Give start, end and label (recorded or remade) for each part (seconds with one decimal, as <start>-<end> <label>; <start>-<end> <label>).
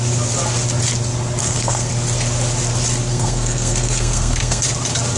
0.0-1.4 recorded; 1.4-1.9 remade; 1.9-3.1 recorded; 3.1-4.6 remade; 4.6-5.2 recorded